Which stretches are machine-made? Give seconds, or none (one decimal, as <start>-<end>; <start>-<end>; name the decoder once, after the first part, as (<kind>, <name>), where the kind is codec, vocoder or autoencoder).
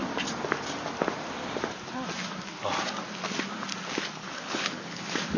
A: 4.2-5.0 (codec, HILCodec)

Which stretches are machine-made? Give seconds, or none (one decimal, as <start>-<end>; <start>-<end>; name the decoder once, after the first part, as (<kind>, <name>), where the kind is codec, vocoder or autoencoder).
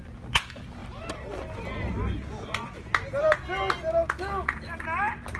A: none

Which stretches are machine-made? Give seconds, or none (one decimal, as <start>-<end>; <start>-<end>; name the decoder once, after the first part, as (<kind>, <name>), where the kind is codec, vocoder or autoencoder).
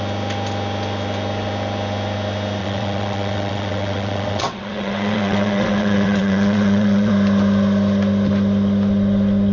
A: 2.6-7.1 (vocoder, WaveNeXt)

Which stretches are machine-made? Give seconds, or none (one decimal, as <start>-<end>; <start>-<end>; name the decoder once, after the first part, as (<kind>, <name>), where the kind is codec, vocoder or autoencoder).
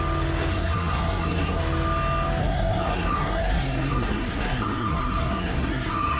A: 0.5-1.6 (codec, SNAC); 2.4-6.2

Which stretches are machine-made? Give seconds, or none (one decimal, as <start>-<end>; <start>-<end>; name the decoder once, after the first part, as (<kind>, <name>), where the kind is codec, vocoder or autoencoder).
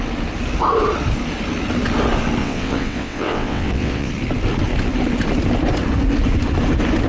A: 2.4-4.1 (vocoder, WaveNeXt)